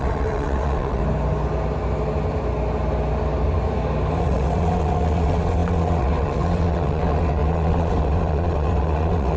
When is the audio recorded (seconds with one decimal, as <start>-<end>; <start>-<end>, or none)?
1.0-4.2